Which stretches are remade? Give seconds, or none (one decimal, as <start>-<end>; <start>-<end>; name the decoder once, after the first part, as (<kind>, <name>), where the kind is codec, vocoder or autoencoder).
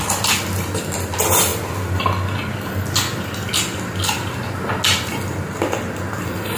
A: none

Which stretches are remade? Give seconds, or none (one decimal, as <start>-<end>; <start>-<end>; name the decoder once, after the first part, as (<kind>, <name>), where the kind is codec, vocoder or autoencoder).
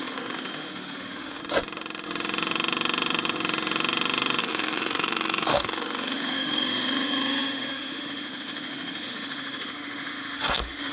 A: 0.0-1.4 (autoencoder, DAC-VAE); 4.4-10.9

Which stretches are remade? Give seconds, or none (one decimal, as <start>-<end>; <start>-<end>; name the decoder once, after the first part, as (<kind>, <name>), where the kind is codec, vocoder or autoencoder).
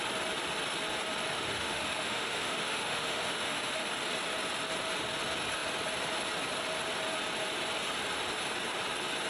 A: 1.3-3.9 (autoencoder, DAC-VAE)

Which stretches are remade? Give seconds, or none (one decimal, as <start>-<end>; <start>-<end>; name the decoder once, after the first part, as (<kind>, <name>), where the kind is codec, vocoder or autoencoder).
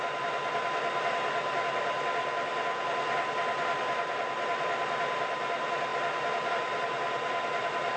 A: none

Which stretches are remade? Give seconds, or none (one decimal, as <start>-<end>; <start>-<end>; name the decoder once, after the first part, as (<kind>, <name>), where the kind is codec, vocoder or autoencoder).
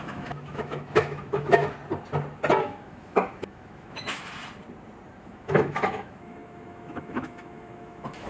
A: 0.0-1.8 (autoencoder, DAC-VAE); 2.6-4.2; 5.2-8.3